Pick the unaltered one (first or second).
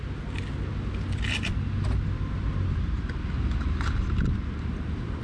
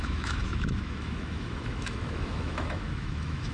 first